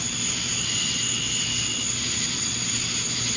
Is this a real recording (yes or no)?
yes